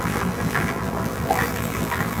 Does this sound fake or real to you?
fake